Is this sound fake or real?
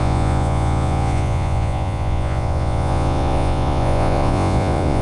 fake